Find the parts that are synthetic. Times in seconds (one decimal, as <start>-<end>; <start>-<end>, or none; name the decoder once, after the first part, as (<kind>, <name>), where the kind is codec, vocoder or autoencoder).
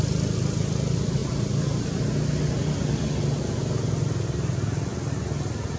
none